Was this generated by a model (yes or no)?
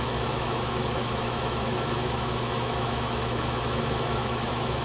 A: yes